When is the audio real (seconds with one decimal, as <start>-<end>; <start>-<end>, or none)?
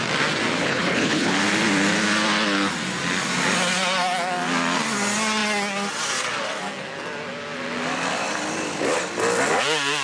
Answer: 0.0-0.6; 1.3-10.0